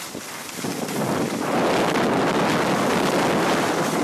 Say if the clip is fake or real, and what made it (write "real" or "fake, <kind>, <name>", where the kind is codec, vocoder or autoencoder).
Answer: real